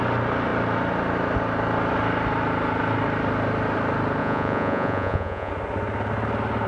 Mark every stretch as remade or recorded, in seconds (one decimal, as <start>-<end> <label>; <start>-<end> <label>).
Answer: 0.0-4.2 recorded; 4.2-5.5 remade; 5.5-6.7 recorded